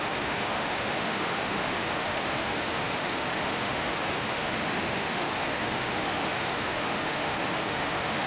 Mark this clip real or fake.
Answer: fake